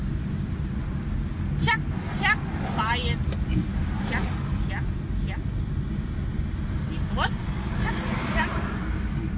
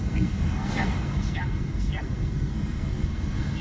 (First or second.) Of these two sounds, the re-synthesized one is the second